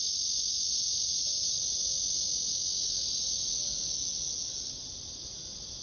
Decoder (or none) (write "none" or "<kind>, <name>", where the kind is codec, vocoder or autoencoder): none